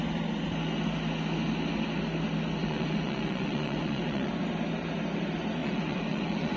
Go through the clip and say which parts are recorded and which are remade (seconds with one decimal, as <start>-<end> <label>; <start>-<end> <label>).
0.0-2.6 recorded; 2.6-4.3 remade; 4.3-5.6 recorded; 5.6-6.6 remade